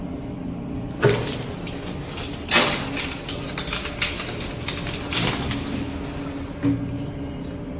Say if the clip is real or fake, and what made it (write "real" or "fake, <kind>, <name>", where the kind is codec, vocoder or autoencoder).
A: real